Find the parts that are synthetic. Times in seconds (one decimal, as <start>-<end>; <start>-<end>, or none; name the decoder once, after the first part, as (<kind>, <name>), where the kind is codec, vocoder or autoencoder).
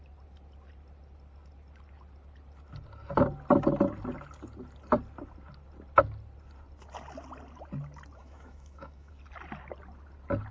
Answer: 8.2-9.1 (autoencoder, DAC-VAE)